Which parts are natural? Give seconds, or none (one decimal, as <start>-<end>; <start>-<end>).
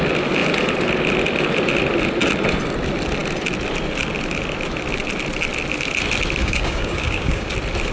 0.0-6.4; 7.5-7.9